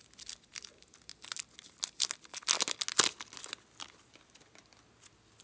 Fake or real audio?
real